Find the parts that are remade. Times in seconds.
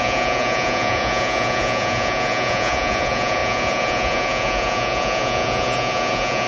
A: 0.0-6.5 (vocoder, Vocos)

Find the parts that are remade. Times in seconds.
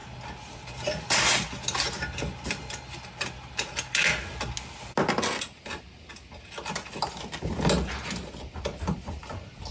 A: none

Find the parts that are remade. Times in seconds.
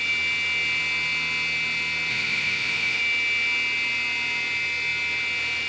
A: 2.1-3.0 (vocoder, Vocos)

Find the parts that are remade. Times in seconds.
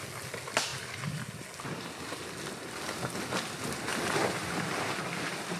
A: none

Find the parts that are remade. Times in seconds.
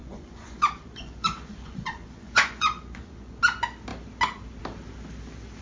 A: 0.0-3.4 (vocoder, Vocos)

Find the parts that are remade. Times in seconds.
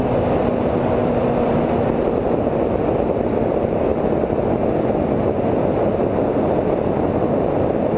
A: none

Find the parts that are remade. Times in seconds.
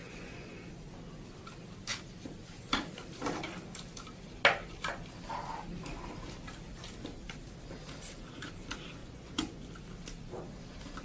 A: 0.0-0.7 (vocoder, Vocos); 9.0-9.7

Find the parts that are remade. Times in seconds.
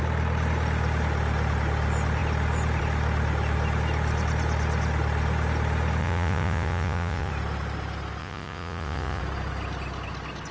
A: 6.0-7.3 (vocoder, Vocos); 8.2-9.2